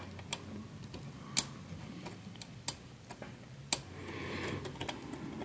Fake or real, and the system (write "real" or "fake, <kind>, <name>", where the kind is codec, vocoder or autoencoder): real